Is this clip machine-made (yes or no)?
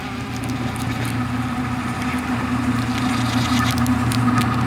no